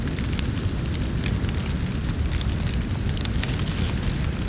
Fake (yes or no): no